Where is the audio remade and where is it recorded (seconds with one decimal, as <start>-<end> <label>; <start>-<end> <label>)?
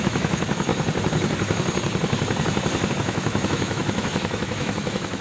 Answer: 0.0-0.7 remade; 0.7-2.9 recorded; 2.9-5.2 remade